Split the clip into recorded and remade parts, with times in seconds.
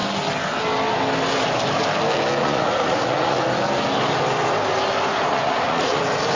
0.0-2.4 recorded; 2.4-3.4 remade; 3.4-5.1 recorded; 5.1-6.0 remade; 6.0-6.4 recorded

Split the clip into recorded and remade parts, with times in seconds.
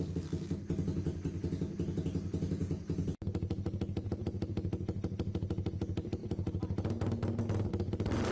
0.0-8.3 recorded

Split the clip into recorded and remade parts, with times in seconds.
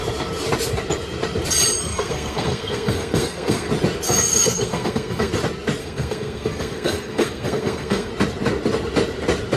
0.0-1.9 recorded; 1.9-3.7 remade; 3.7-4.3 recorded; 4.3-5.3 remade; 5.3-5.8 recorded; 5.8-8.1 remade; 8.1-9.6 recorded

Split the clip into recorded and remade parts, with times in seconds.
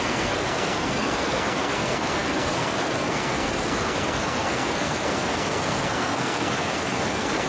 0.0-7.5 remade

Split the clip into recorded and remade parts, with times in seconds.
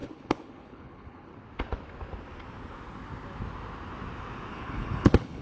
0.0-1.3 remade; 1.3-4.5 recorded; 4.5-5.4 remade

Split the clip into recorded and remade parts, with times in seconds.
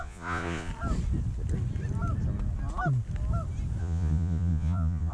0.0-0.7 remade; 0.7-3.8 recorded; 3.8-5.1 remade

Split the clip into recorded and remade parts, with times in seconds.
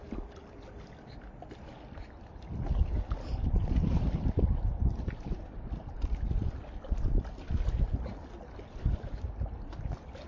0.0-10.3 recorded